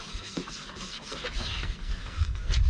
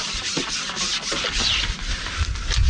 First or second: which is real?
second